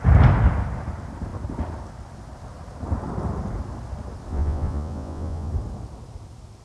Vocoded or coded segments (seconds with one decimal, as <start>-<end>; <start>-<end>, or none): 4.3-5.5